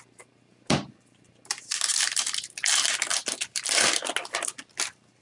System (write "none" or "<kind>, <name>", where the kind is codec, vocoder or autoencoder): none